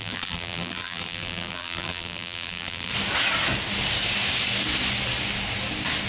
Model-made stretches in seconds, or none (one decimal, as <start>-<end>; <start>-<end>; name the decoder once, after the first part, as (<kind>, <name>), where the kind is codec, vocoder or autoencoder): 0.0-2.9 (vocoder, BigVGAN v2)